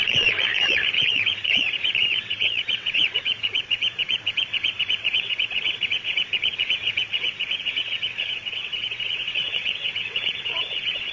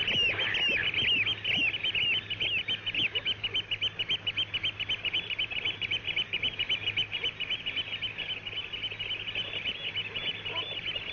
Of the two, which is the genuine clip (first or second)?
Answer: second